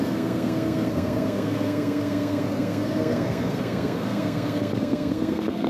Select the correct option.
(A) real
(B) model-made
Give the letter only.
B